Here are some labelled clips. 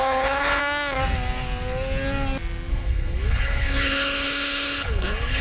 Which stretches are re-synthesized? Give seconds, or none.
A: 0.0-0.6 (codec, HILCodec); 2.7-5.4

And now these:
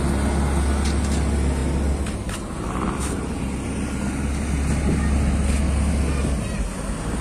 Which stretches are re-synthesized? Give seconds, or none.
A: none

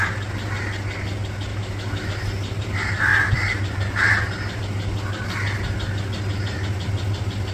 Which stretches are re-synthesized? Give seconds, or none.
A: 1.5-2.1 (autoencoder, DAC-VAE)

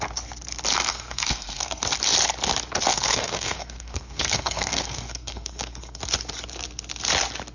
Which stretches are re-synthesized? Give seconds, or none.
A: 0.9-1.8 (codec, SNAC); 2.9-6.0

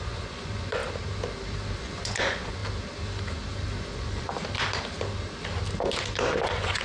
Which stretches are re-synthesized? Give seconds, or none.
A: 0.0-0.8 (vocoder, Vocos); 1.8-2.6; 3.9-4.3; 6.0-6.8